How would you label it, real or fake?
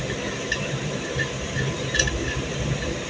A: real